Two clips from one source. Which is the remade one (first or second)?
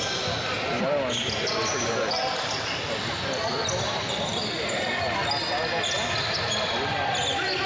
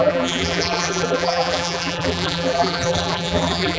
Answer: second